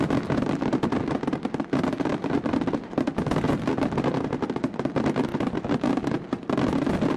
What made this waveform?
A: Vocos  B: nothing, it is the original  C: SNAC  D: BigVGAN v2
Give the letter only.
B